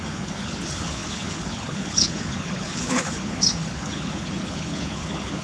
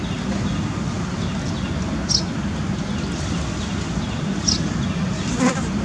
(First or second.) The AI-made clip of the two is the first